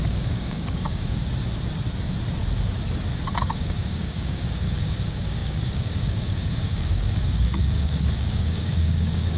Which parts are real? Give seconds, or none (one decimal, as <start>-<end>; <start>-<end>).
1.2-3.4